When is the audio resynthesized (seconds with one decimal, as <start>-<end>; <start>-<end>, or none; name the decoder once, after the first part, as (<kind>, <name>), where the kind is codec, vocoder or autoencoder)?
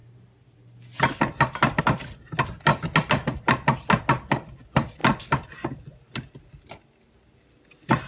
none